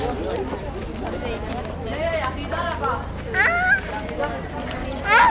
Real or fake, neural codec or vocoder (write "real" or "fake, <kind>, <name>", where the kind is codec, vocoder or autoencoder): real